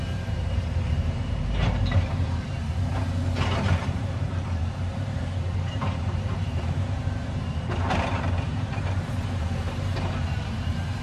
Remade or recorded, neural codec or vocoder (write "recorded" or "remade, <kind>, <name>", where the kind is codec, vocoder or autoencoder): remade, vocoder, BigVGAN v2